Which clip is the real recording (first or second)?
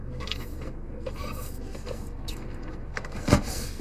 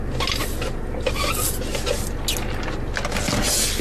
second